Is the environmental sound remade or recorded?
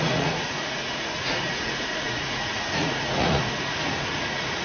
remade